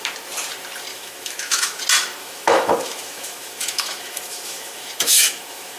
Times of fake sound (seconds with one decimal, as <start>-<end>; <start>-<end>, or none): 0.9-1.8; 2.2-5.8